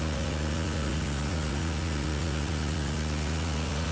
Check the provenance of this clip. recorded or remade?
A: remade